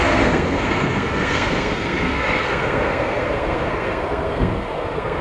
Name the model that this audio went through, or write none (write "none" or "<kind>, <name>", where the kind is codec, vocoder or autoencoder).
codec, SNAC